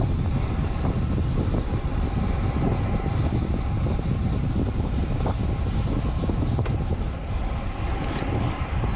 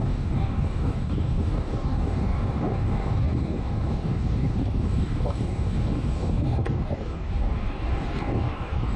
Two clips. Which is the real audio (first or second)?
first